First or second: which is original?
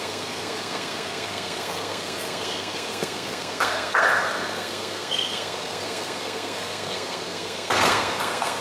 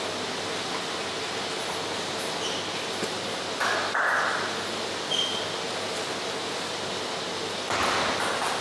second